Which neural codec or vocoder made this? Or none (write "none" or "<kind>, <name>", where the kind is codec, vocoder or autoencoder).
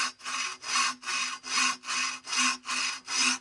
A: none